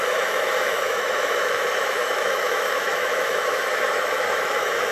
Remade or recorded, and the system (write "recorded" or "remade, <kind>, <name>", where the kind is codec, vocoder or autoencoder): remade, autoencoder, DAC-VAE